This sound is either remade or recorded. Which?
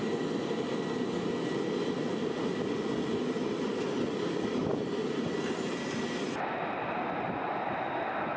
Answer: recorded